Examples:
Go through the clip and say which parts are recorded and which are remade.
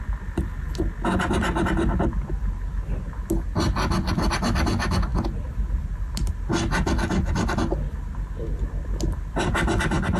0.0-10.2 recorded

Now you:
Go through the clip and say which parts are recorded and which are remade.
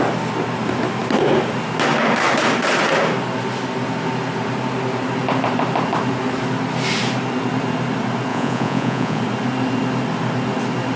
0.0-8.3 recorded; 8.3-9.2 remade; 9.2-11.0 recorded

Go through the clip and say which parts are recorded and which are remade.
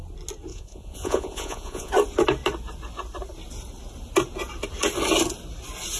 0.0-0.5 recorded; 0.5-1.9 remade; 1.9-6.0 recorded